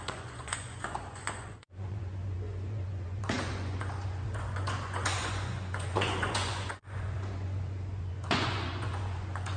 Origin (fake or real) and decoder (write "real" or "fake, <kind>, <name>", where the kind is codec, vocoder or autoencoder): fake, vocoder, Vocos